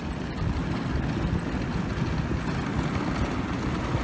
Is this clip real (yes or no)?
yes